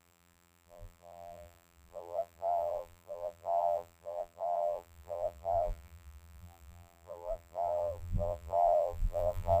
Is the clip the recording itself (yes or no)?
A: no